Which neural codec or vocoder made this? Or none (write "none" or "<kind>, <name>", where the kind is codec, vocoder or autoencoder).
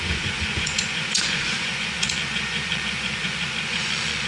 vocoder, Vocos